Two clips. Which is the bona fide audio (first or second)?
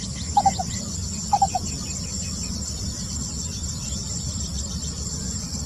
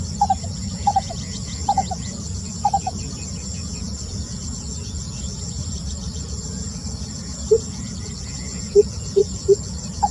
first